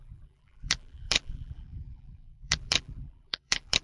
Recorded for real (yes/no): no